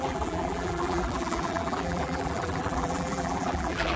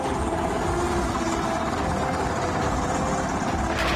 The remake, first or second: first